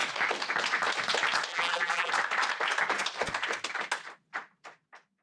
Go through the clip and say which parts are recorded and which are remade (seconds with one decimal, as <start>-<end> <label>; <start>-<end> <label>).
0.0-1.5 recorded; 1.5-2.1 remade; 2.1-5.2 recorded